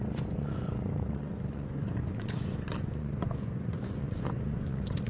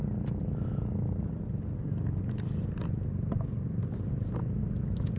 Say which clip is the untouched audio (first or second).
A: second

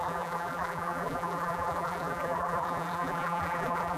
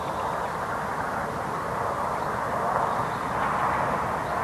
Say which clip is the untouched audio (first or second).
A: second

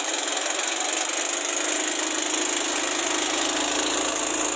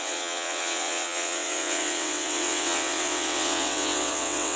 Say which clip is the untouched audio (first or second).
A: first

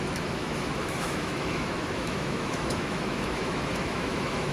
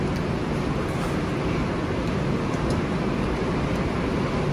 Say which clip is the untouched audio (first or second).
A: second